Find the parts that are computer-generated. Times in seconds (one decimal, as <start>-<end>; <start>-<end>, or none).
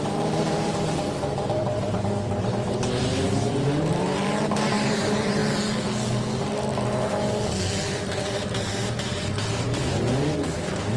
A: 0.0-5.4; 8.4-11.0